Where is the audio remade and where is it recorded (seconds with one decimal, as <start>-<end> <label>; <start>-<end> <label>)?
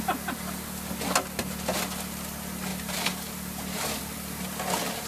0.0-5.1 recorded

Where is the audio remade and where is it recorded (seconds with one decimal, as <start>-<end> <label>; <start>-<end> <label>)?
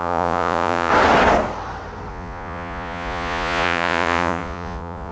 0.0-0.9 remade; 0.9-2.1 recorded; 2.1-5.1 remade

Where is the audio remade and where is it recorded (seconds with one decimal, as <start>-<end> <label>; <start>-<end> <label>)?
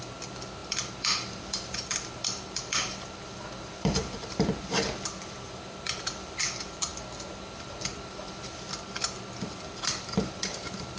0.0-11.0 remade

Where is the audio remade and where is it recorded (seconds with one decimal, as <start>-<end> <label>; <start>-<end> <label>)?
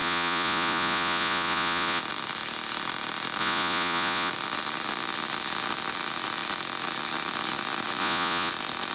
0.0-2.0 remade; 2.0-3.4 recorded; 3.4-4.3 remade; 4.3-8.0 recorded; 8.0-8.5 remade; 8.5-8.9 recorded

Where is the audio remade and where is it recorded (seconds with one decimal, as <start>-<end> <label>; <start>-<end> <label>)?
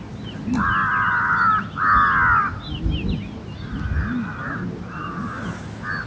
0.0-6.1 recorded